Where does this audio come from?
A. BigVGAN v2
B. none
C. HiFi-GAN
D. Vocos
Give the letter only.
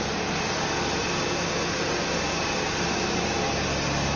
B